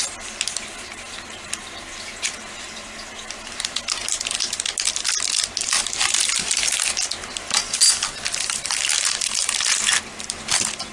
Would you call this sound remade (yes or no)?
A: no